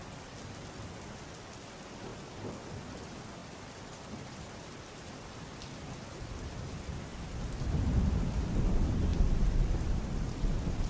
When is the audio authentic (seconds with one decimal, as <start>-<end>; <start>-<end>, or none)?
0.0-3.4; 4.6-7.1; 8.4-9.1; 10.4-10.9